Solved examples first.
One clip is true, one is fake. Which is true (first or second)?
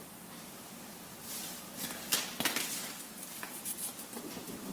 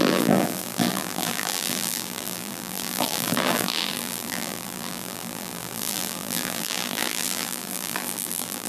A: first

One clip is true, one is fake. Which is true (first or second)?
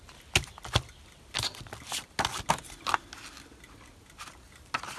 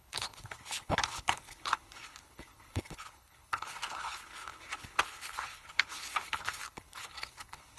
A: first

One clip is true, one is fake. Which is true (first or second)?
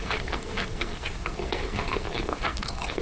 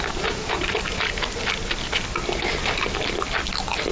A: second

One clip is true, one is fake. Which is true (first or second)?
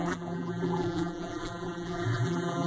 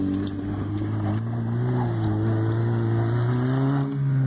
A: second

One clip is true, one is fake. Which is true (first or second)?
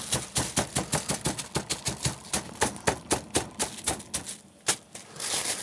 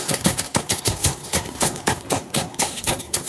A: first